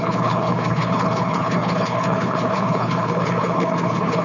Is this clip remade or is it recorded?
remade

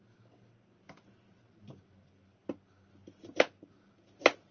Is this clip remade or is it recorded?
recorded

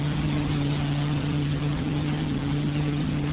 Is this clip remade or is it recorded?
remade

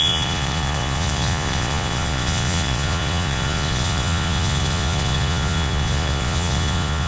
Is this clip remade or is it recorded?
remade